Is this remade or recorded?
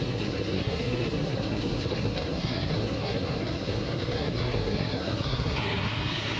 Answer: remade